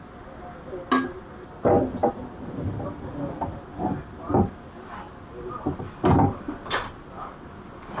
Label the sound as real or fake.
real